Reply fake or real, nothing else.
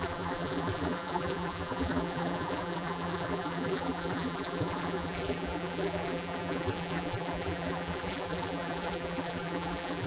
fake